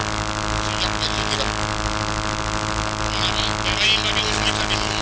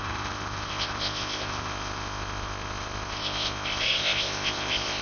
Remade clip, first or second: second